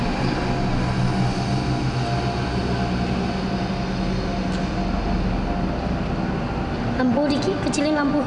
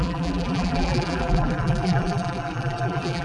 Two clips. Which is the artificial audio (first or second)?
second